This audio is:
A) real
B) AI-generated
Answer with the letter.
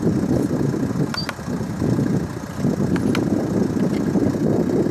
A